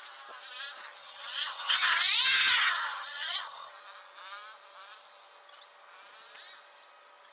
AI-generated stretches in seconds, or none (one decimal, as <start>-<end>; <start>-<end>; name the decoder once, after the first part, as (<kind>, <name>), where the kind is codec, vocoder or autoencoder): 1.0-3.7 (vocoder, HiFi-GAN)